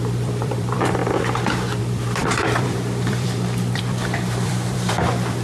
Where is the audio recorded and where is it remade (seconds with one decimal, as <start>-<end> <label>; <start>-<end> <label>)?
0.0-1.0 remade; 1.0-1.8 recorded; 1.8-5.4 remade